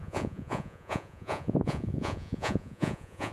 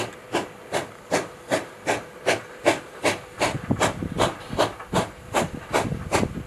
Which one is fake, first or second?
first